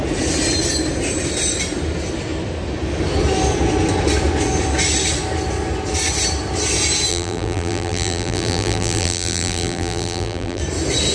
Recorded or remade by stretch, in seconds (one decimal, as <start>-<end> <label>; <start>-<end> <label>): 0.0-7.1 recorded; 7.1-10.6 remade; 10.6-11.1 recorded